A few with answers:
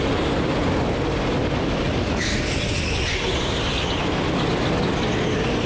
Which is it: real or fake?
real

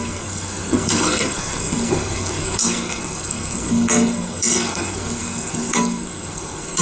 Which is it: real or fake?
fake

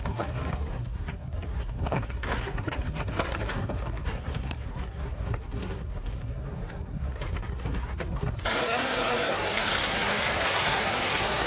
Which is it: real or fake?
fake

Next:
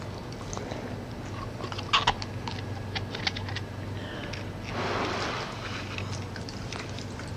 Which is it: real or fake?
real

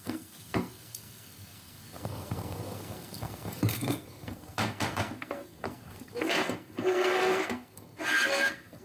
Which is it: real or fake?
fake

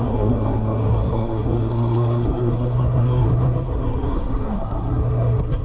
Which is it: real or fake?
fake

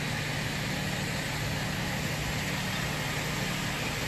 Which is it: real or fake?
real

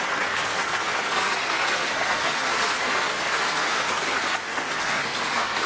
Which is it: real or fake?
fake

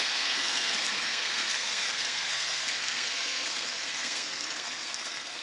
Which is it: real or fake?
fake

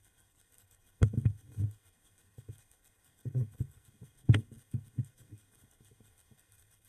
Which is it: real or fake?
fake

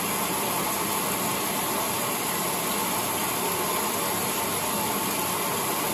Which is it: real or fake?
real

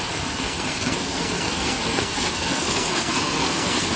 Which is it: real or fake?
fake